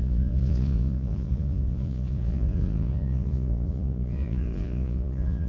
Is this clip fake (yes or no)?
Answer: yes